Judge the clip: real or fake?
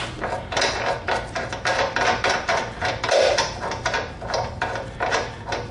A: real